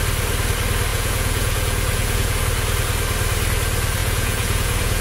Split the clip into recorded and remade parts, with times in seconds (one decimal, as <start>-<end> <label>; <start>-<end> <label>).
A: 0.0-0.9 recorded; 0.9-2.4 remade; 2.4-4.0 recorded; 4.0-5.0 remade